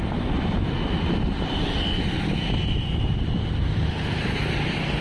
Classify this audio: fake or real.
real